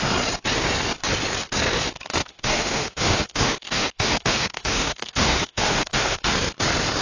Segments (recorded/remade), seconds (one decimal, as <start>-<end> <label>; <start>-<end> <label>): 0.0-2.2 recorded; 2.2-6.2 remade; 6.2-7.0 recorded